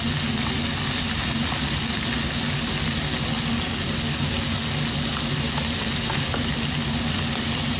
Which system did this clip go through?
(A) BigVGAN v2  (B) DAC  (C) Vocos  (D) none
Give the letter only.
D